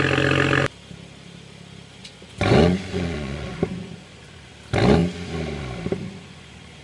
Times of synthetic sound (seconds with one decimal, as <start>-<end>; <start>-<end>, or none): 2.0-4.5; 6.0-6.8